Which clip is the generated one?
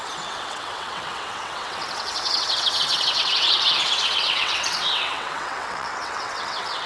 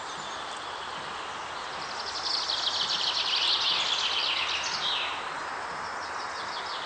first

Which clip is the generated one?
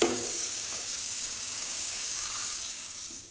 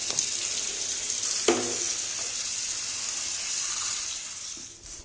first